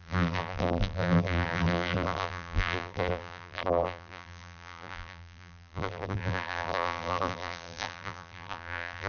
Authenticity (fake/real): fake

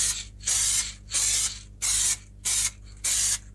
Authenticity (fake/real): real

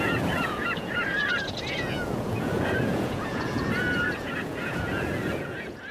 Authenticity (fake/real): fake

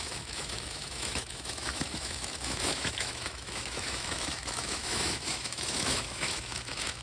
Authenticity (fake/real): fake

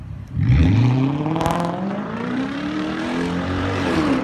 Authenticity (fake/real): fake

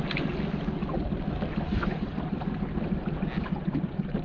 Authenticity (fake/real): real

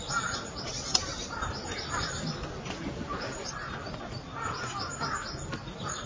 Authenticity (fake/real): real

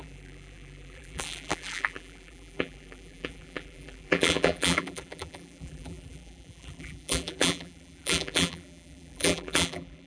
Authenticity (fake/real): fake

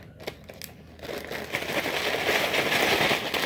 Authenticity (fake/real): real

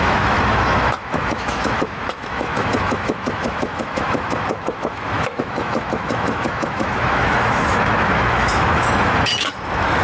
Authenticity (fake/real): fake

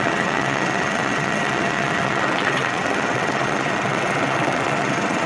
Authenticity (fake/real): fake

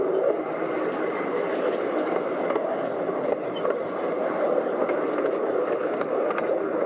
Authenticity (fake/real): real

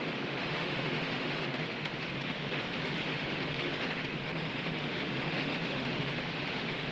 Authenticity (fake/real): fake